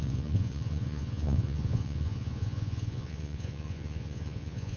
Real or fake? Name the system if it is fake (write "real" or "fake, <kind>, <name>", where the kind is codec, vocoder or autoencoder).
fake, vocoder, Vocos